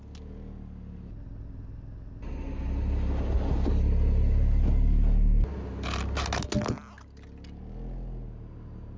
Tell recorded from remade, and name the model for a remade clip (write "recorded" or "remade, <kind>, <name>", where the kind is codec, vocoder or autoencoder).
recorded